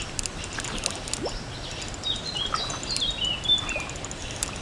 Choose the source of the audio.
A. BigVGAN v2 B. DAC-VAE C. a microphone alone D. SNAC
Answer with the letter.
C